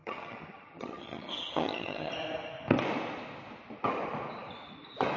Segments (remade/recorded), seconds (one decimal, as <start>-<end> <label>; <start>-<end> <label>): 0.0-2.1 remade; 2.1-5.2 recorded